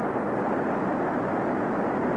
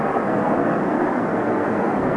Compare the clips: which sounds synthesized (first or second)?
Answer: second